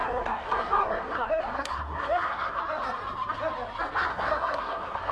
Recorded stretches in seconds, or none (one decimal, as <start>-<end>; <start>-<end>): 2.6-4.1